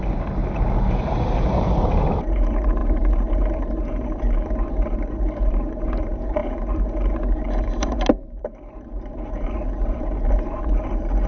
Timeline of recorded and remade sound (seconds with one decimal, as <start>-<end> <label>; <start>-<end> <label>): 0.0-0.4 remade; 0.4-0.9 recorded; 0.9-11.3 remade